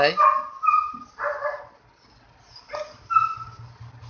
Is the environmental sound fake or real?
real